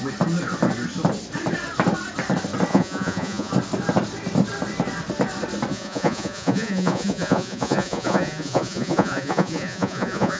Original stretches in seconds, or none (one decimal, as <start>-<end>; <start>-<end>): 0.0-2.7; 3.5-5.7